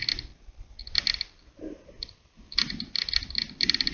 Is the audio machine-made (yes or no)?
no